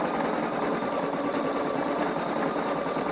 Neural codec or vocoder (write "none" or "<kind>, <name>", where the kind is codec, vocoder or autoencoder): vocoder, BigVGAN v2